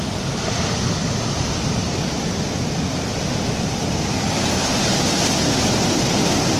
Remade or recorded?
recorded